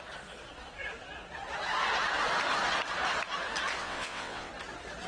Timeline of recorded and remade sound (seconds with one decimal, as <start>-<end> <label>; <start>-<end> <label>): 0.0-3.8 recorded; 3.8-4.5 remade; 4.5-5.1 recorded